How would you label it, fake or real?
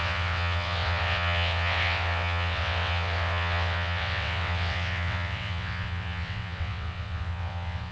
fake